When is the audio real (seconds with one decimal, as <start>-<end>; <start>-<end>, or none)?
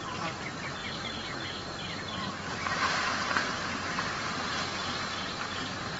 0.8-1.8